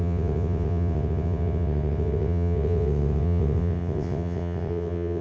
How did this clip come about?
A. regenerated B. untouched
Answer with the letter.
A